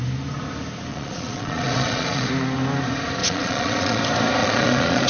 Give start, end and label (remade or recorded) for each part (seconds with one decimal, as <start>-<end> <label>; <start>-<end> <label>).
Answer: 0.0-0.9 recorded; 0.9-2.3 remade; 2.3-3.2 recorded; 3.2-4.0 remade; 4.0-4.4 recorded; 4.4-5.1 remade